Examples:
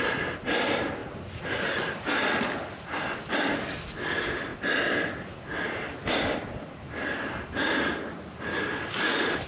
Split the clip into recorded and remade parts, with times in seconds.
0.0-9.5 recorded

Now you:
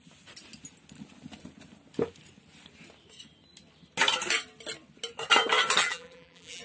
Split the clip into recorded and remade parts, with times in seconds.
0.0-5.8 recorded; 5.8-6.6 remade

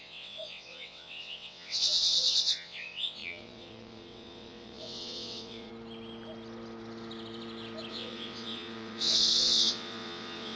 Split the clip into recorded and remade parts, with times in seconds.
0.0-5.7 remade; 5.7-7.9 recorded; 7.9-10.6 remade